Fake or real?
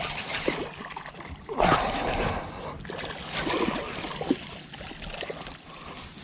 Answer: real